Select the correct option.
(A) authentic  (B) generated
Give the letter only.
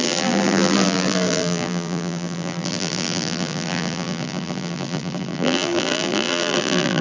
B